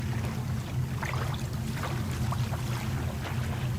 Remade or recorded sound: recorded